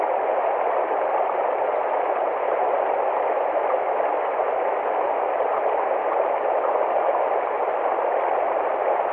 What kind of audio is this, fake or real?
real